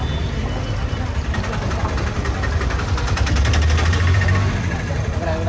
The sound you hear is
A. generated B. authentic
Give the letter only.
A